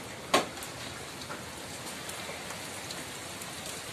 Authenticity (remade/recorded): recorded